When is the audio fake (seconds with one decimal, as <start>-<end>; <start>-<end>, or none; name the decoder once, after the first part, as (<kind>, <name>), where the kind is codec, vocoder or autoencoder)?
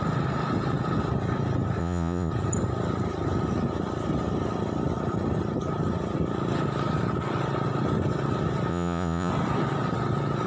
1.8-2.3 (vocoder, Vocos); 8.7-9.3